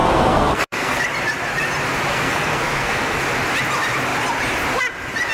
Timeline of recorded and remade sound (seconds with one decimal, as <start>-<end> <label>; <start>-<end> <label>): 0.0-1.0 remade; 1.0-2.1 recorded; 2.1-3.2 remade; 3.2-5.3 recorded